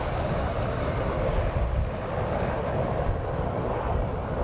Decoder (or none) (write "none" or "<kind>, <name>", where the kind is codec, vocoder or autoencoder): none